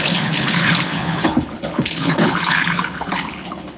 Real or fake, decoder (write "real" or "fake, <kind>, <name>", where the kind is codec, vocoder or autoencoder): fake, codec, HILCodec